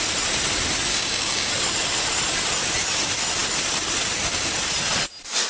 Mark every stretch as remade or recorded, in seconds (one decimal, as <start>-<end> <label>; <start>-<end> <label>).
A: 0.0-0.9 recorded; 0.9-1.5 remade; 1.5-5.5 recorded